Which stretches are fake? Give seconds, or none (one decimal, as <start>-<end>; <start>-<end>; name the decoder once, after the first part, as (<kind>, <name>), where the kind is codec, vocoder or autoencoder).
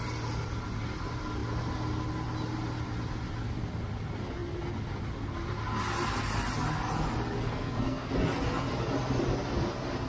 7.4-8.1 (codec, SNAC)